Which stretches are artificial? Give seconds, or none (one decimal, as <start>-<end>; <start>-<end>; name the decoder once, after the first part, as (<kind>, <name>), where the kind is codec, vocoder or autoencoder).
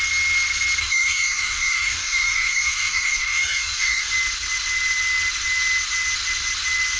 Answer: 0.8-4.1 (codec, DAC)